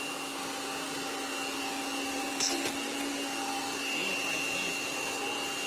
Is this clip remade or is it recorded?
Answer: recorded